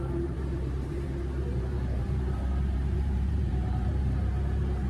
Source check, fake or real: fake